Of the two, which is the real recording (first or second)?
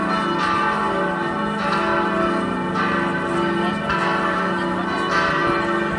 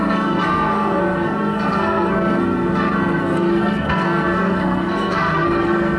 first